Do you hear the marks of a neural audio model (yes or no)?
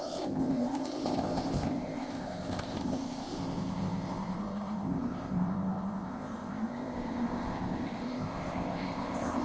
yes